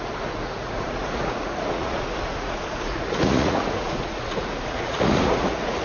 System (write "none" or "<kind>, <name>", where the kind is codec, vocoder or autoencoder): vocoder, Vocos